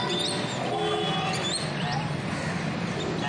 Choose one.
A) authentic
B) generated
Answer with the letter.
A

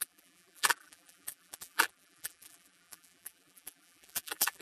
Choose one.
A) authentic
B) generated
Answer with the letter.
B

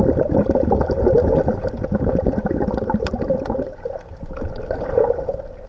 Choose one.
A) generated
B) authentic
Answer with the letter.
B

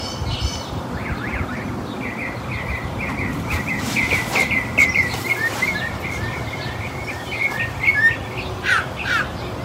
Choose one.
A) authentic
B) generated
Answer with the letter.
A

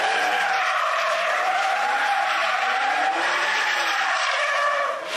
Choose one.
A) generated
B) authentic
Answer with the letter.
A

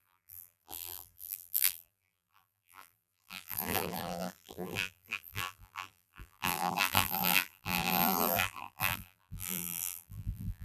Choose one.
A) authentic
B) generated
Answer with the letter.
B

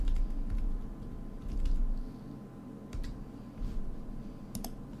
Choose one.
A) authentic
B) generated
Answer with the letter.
A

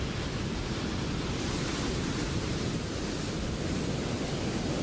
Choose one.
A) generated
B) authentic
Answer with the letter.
B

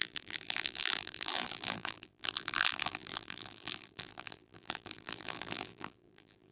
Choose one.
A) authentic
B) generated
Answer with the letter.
B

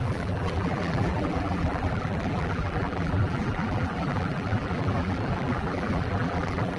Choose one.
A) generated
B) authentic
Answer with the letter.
A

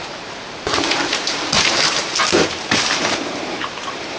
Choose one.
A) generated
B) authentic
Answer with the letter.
A